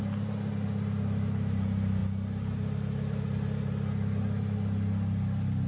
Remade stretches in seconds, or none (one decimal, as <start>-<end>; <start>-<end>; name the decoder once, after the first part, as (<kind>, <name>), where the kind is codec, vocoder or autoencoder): none